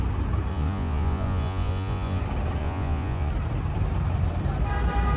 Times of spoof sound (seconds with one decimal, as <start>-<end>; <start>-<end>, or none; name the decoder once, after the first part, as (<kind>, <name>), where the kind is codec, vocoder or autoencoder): 0.5-2.2 (vocoder, Vocos); 2.6-3.3